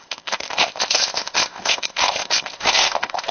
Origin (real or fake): fake